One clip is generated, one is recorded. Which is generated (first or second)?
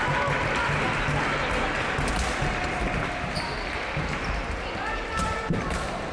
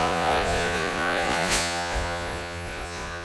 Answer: second